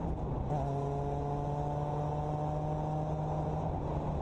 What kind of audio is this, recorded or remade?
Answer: recorded